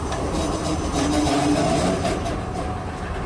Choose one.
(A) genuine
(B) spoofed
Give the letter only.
A